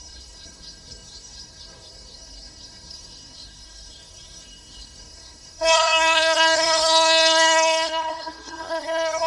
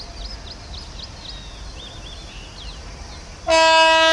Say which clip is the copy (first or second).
first